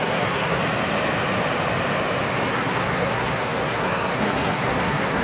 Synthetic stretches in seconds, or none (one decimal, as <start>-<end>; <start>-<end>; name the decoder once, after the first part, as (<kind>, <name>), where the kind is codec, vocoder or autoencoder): 0.0-0.6 (codec, SNAC); 2.5-5.2